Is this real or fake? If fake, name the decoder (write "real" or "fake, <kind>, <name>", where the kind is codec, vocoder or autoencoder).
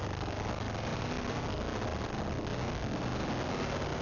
real